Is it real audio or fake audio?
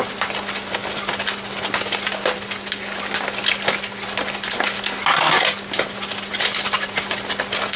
real